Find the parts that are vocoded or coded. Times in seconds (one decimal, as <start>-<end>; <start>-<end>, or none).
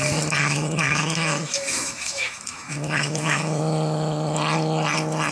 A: 0.4-3.6